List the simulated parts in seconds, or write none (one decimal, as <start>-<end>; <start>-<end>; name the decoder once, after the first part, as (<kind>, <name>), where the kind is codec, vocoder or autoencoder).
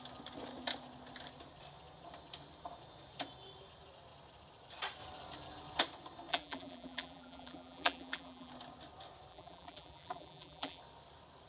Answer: 6.3-8.5 (vocoder, BigVGAN v2); 9.3-10.8